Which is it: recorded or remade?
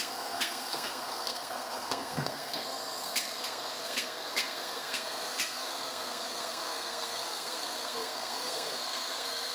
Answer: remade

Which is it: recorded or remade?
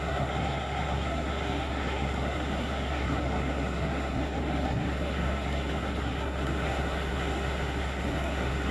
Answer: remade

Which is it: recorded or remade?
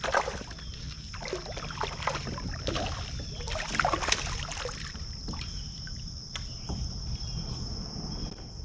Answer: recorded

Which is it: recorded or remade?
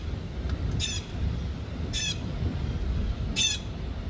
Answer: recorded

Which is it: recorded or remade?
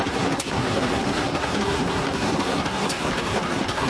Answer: remade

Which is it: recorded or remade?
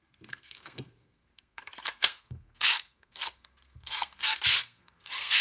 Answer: remade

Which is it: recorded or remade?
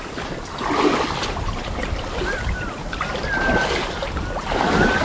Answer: recorded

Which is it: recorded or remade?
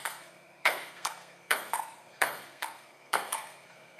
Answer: remade